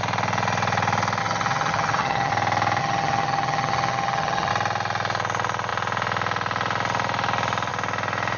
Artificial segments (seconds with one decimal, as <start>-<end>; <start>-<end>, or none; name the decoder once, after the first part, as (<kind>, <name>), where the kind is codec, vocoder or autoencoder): 1.2-2.3 (vocoder, HiFi-GAN); 2.8-4.5